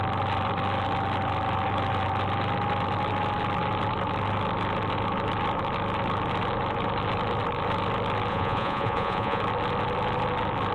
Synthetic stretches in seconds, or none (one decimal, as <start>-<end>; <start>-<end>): 8.3-9.4